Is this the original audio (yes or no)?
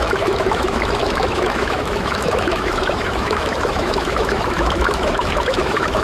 no